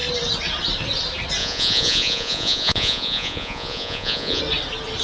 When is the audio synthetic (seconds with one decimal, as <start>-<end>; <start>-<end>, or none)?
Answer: 1.4-4.4